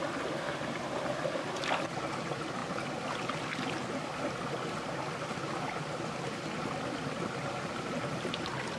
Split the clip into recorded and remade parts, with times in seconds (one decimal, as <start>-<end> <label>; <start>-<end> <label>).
0.0-8.8 recorded